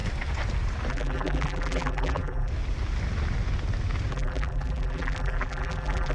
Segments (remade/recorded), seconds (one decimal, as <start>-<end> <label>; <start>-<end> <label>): 0.0-0.9 recorded; 0.9-2.5 remade; 2.5-4.1 recorded; 4.1-6.1 remade